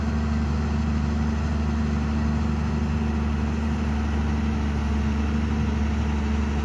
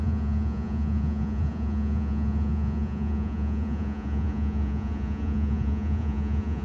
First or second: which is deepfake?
second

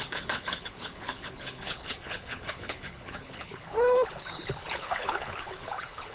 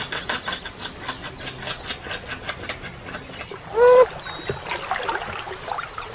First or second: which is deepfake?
first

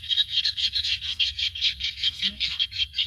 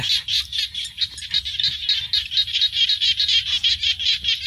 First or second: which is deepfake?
first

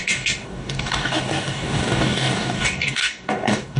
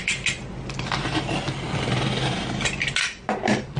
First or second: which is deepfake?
first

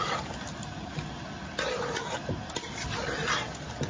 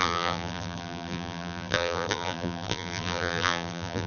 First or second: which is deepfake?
second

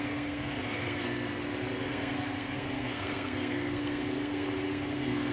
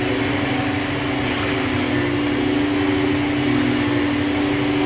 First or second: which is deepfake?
first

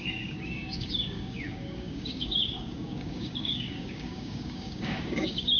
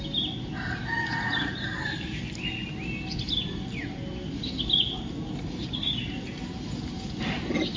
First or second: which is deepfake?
first